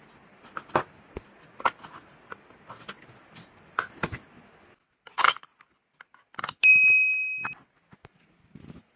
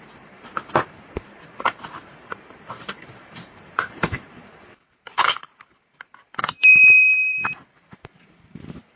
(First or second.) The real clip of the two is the first